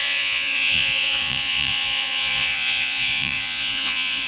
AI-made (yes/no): yes